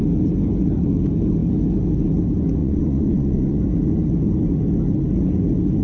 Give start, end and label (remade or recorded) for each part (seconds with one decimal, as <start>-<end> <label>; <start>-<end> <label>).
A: 0.0-2.6 recorded; 2.6-3.6 remade; 3.6-5.8 recorded